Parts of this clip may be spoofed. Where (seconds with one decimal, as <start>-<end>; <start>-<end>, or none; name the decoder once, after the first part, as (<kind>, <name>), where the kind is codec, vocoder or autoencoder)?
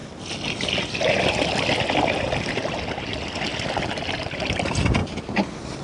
none